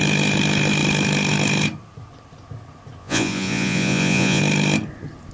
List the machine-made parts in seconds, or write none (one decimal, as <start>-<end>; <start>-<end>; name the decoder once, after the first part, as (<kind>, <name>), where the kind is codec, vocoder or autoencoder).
3.0-4.4 (vocoder, Vocos)